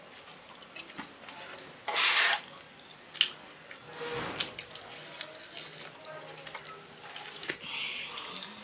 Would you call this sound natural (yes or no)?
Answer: yes